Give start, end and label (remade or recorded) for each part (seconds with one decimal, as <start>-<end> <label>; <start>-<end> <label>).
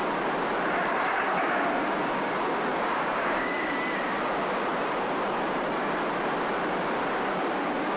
0.0-2.7 recorded; 2.7-3.7 remade; 3.7-8.0 recorded